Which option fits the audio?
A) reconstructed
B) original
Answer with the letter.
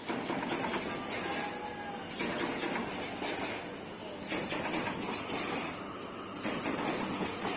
B